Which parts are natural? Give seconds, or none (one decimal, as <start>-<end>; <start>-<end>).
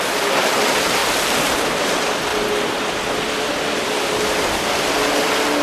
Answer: 0.0-1.0; 1.8-5.6